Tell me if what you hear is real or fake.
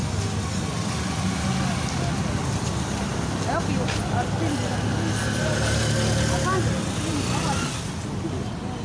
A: real